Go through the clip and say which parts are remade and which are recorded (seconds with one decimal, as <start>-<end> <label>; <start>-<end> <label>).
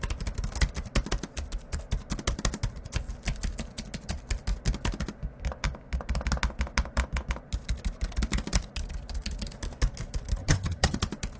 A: 0.0-10.4 recorded; 10.4-11.0 remade; 11.0-11.4 recorded